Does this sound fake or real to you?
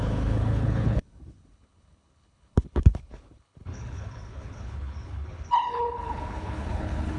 fake